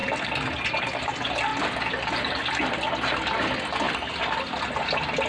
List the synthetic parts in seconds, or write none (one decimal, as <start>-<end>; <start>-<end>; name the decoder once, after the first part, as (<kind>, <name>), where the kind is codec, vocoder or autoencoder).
0.0-1.1 (vocoder, BigVGAN v2)